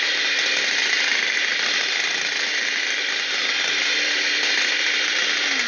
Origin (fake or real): real